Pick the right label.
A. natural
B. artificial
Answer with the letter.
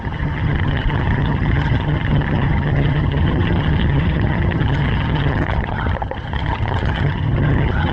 B